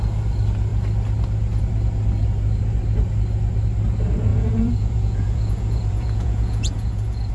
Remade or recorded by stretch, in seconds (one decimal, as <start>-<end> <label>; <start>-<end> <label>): 0.0-4.3 recorded; 4.3-7.3 remade